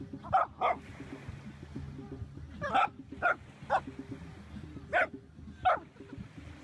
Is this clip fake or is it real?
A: real